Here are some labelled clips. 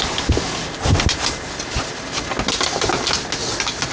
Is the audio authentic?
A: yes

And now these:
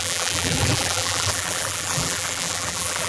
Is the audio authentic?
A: no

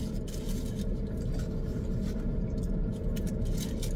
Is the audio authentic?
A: yes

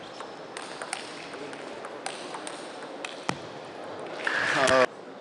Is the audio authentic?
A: yes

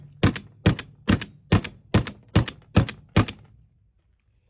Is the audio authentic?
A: yes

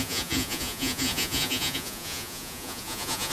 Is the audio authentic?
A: no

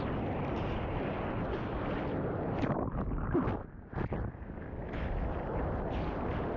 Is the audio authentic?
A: yes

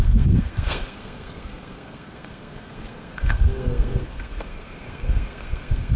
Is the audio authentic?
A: no